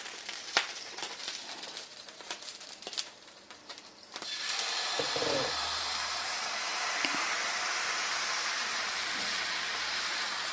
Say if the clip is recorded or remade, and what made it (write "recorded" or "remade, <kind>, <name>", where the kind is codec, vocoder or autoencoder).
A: remade, vocoder, BigVGAN v2